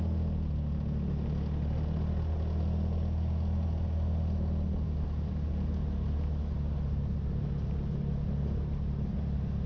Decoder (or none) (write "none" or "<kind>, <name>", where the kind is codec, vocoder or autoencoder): none